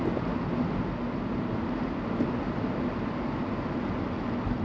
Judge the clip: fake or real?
real